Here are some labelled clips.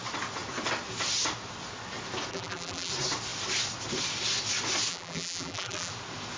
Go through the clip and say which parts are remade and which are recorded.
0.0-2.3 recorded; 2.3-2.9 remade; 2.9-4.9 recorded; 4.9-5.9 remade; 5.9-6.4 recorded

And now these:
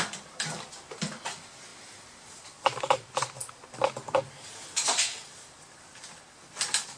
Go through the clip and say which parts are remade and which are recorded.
0.0-7.0 recorded

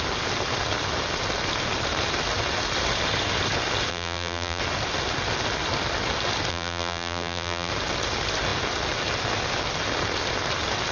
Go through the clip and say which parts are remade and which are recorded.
0.0-3.9 recorded; 3.9-4.6 remade; 4.6-6.5 recorded; 6.5-7.7 remade; 7.7-10.9 recorded

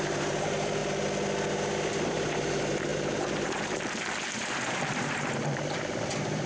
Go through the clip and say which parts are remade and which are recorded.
0.0-0.8 remade; 0.8-1.5 recorded; 1.5-6.5 remade

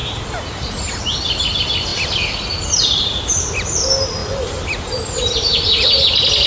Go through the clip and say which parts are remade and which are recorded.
0.0-0.9 remade; 0.9-1.9 recorded; 1.9-3.7 remade; 3.7-4.2 recorded; 4.2-6.1 remade; 6.1-6.5 recorded

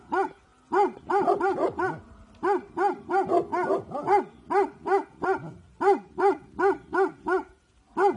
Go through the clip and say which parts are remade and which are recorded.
0.0-8.2 recorded

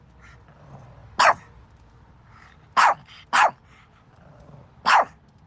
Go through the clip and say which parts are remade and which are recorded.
0.0-5.5 recorded

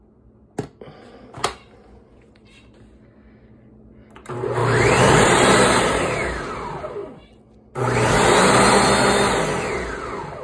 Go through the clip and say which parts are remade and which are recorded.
0.0-4.6 recorded; 4.6-5.8 remade; 5.8-10.4 recorded